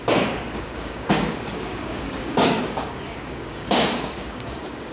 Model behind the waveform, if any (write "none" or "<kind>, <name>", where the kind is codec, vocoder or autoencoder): codec, DAC